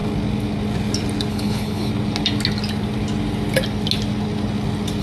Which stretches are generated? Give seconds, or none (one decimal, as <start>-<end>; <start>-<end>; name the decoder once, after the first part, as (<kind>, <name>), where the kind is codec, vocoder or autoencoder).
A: 1.3-1.9 (codec, HILCodec)